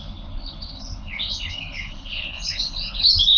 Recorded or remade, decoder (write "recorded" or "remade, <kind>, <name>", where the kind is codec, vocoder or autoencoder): remade, codec, HILCodec